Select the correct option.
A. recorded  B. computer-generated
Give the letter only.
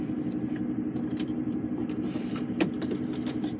A